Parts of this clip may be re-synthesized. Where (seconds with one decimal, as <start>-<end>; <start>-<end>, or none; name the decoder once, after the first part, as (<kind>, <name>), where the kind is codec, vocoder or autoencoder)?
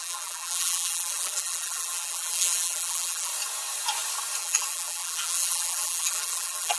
0.0-3.3 (vocoder, BigVGAN v2); 4.4-6.8